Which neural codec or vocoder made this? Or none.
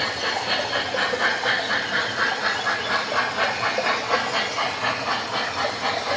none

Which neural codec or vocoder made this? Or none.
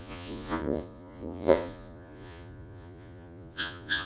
vocoder, Vocos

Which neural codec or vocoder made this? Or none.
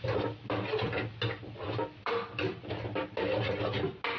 none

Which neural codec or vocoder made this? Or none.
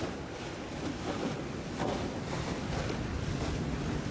none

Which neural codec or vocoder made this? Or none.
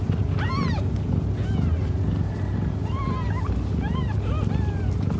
none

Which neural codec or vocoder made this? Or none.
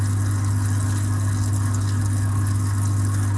none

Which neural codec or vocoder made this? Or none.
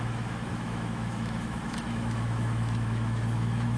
autoencoder, DAC-VAE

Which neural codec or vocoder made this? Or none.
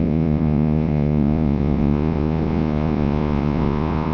vocoder, Vocos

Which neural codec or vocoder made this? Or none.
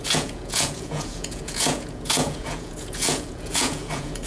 vocoder, Vocos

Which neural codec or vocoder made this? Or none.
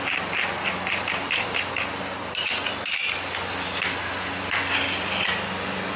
none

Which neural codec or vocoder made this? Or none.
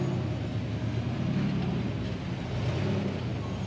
none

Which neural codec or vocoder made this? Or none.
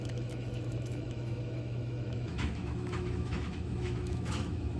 autoencoder, DAC-VAE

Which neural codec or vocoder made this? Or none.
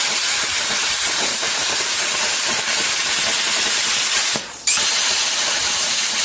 vocoder, BigVGAN v2